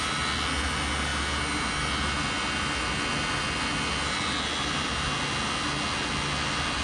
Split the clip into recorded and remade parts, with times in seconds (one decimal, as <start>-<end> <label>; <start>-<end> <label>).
0.0-6.8 recorded